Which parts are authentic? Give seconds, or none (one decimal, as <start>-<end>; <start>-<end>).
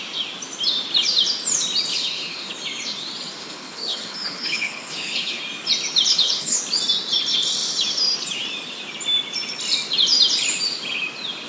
0.0-1.9; 2.5-3.4; 5.4-6.1; 6.6-11.5